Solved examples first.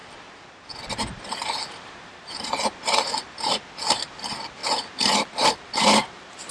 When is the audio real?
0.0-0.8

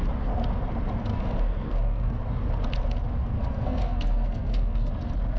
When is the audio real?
0.0-1.1; 2.2-3.2; 4.9-5.4

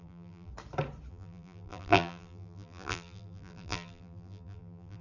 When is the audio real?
0.5-1.1